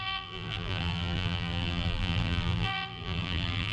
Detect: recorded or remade remade